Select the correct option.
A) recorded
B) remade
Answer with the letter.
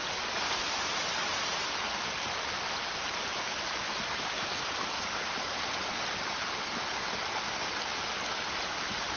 A